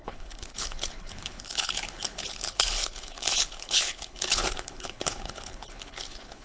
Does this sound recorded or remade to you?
remade